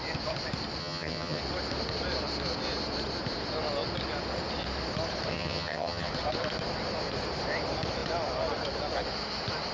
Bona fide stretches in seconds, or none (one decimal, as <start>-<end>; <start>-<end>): 0.0-0.8; 1.4-5.3; 6.1-9.7